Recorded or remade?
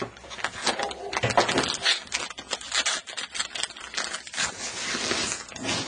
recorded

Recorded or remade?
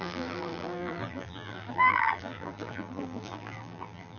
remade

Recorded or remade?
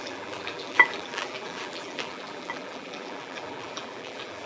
remade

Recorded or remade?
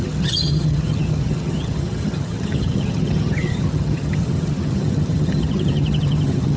remade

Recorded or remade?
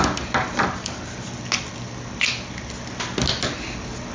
recorded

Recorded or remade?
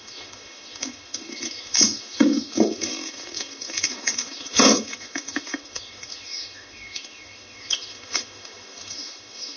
remade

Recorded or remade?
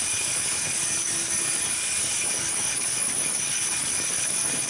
remade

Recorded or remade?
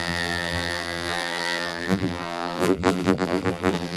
remade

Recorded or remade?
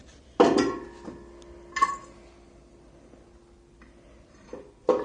recorded